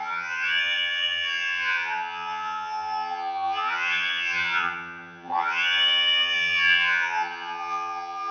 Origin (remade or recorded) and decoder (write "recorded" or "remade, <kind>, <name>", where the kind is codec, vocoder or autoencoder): remade, vocoder, HiFi-GAN